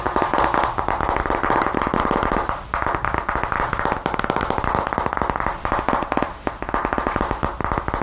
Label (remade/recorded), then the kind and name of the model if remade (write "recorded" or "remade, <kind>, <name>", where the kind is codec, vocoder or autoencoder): recorded